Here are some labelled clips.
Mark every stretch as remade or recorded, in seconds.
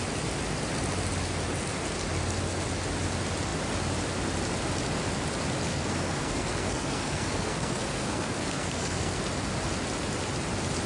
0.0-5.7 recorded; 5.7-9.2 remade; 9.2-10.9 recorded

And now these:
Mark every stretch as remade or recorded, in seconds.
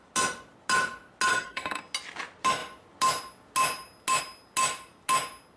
0.0-1.3 recorded; 1.3-1.8 remade; 1.8-5.6 recorded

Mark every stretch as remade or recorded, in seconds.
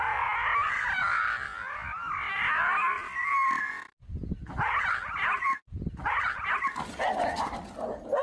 0.0-8.2 recorded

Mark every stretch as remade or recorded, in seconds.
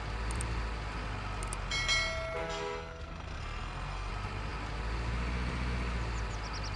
0.0-2.4 recorded; 2.4-4.1 remade; 4.1-6.8 recorded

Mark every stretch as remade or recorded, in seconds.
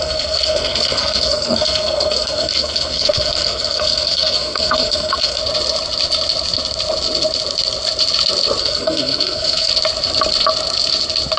0.0-5.4 remade; 5.4-8.6 recorded; 8.6-9.7 remade; 9.7-11.4 recorded